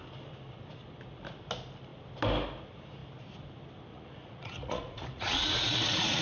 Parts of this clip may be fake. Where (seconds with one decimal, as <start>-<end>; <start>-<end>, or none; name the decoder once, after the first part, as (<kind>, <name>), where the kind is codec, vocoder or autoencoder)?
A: 3.9-6.2 (vocoder, Vocos)